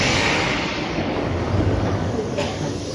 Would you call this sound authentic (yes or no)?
no